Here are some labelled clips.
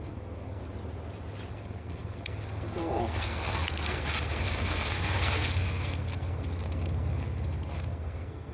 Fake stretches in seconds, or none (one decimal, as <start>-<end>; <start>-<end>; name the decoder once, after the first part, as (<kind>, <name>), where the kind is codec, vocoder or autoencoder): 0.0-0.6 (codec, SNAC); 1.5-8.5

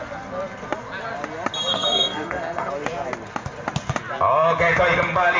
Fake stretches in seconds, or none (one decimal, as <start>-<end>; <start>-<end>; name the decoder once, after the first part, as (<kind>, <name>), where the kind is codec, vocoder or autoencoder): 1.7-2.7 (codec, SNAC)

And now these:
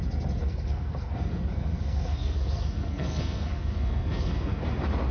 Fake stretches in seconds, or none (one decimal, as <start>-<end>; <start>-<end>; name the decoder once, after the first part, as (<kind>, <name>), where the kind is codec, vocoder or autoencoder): 0.4-1.1 (codec, SNAC); 1.5-4.6

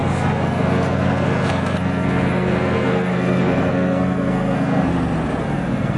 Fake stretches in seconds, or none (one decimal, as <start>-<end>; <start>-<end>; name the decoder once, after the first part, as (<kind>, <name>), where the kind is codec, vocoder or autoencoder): 0.0-4.9 (codec, SNAC); 5.4-6.0

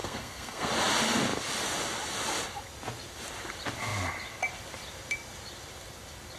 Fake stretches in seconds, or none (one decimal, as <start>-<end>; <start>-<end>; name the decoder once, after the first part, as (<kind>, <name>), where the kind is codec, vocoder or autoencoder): 0.0-0.7 (codec, SNAC)